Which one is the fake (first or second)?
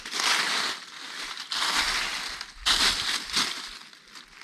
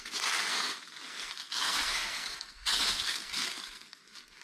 second